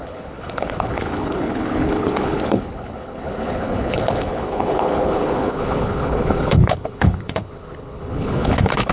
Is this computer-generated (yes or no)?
yes